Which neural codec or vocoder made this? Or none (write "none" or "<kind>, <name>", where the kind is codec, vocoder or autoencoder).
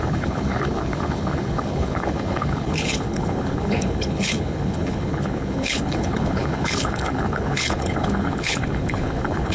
codec, HILCodec